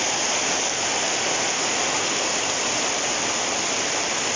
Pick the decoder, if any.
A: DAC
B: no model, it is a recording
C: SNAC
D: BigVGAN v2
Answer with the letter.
B